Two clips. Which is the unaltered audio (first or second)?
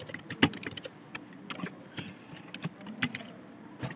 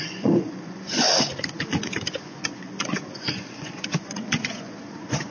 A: first